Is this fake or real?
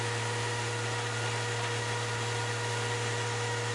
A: real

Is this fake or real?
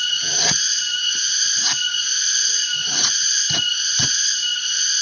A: fake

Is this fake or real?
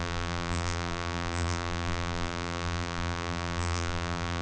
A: fake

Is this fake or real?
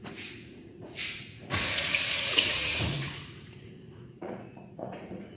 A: fake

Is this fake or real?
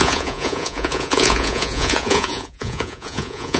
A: fake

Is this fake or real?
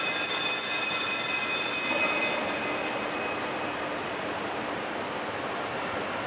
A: real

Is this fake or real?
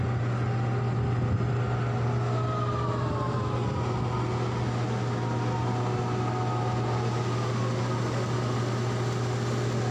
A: real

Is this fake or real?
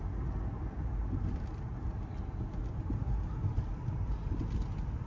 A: real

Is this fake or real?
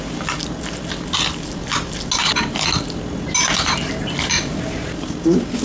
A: real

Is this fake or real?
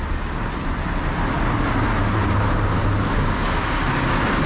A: real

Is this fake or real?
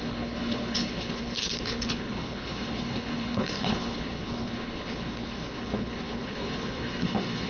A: fake